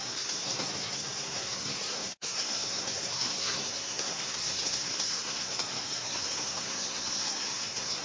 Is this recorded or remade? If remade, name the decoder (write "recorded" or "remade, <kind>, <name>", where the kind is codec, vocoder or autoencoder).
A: remade, codec, SNAC